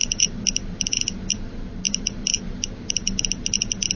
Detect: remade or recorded remade